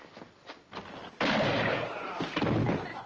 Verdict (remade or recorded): recorded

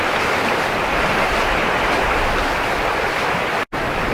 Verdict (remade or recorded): recorded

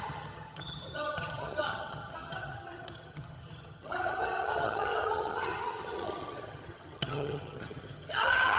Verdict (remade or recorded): remade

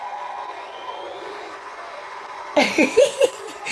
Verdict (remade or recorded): remade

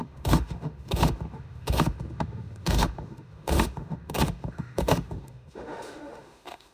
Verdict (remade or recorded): remade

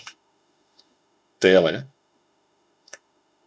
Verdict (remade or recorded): remade